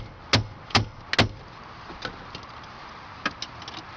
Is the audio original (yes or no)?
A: yes